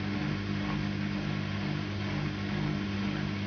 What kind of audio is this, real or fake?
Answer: real